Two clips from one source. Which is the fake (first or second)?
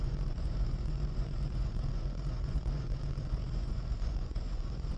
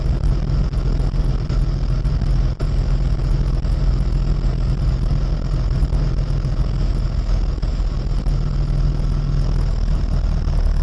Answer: first